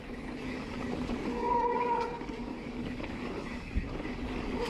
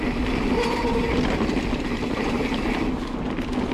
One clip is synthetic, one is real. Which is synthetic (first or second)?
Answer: first